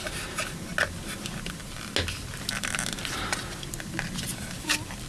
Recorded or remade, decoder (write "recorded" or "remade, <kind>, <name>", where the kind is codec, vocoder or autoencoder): recorded